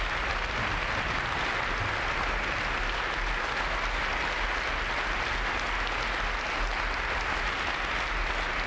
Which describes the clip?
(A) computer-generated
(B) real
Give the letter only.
B